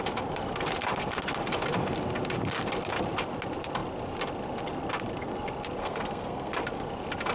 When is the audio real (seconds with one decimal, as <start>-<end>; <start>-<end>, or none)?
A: 0.0-5.8; 6.5-7.3